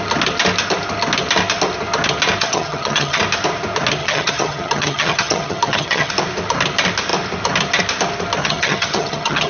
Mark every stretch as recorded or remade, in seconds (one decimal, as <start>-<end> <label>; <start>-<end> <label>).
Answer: 0.0-2.4 recorded; 2.4-3.2 remade; 3.2-4.0 recorded; 4.0-6.1 remade; 6.1-8.4 recorded; 8.4-9.5 remade